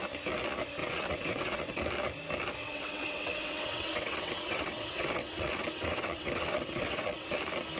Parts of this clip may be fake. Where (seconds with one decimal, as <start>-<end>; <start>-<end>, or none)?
0.8-1.8; 2.6-7.3